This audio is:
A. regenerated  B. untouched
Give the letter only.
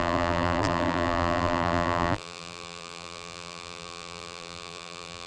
A